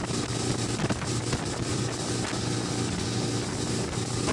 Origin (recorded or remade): recorded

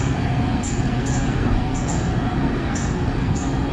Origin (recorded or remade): remade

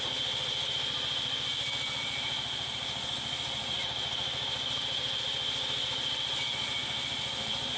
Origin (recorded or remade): recorded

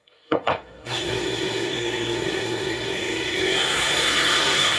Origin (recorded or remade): remade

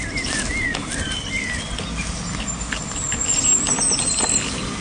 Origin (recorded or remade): recorded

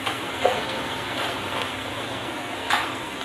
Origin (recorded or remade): remade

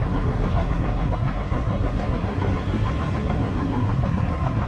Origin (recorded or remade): remade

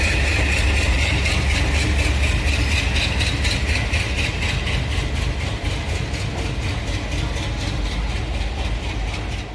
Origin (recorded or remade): recorded